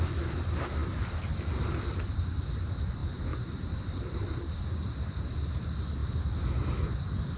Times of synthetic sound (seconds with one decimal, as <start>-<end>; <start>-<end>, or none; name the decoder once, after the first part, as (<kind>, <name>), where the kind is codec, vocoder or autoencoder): none